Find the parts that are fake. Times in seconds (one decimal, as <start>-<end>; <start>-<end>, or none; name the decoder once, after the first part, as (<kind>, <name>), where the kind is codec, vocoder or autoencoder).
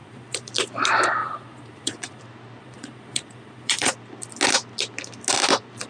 0.0-0.5 (vocoder, Vocos); 1.2-2.2; 2.6-3.9